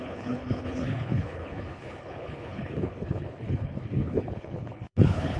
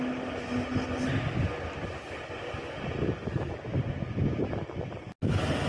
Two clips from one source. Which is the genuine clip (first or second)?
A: second